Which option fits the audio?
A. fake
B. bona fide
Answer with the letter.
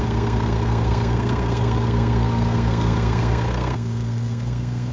A